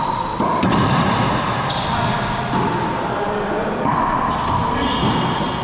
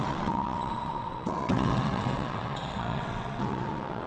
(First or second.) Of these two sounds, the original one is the first